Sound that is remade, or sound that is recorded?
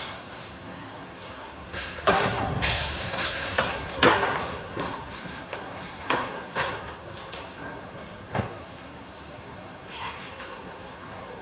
remade